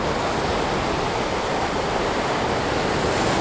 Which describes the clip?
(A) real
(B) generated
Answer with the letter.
A